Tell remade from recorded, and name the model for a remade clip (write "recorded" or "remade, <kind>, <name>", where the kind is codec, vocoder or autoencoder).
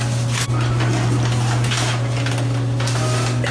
recorded